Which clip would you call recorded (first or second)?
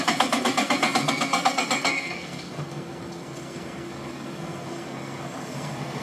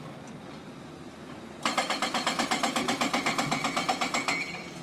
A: second